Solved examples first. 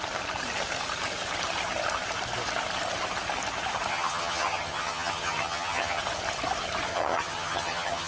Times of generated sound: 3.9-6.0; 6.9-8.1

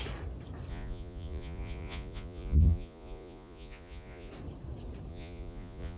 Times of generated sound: 0.7-4.3; 5.1-6.0

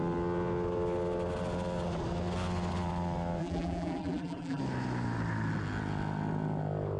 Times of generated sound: 3.4-4.6

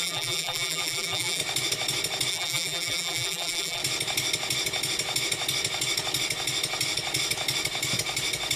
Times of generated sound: 0.0-1.4; 2.3-3.8

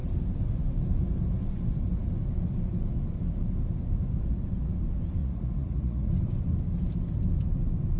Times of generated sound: 5.2-6.1

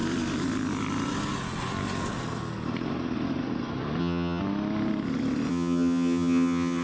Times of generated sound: 4.0-4.4; 5.5-6.8

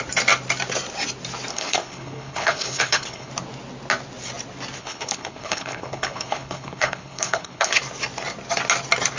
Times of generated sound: 1.5-3.3; 4.8-7.8